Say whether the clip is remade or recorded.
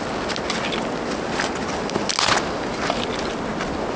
recorded